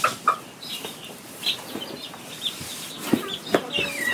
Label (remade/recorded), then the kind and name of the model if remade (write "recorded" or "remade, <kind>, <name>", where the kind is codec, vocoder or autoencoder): recorded